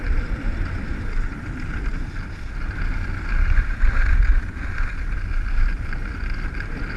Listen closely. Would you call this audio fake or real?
real